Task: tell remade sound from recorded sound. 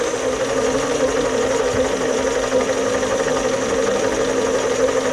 recorded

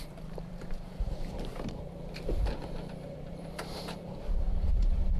remade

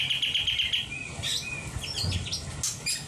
recorded